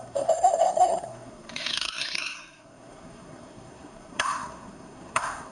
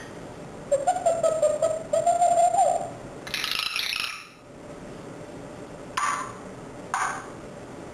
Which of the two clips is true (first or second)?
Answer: second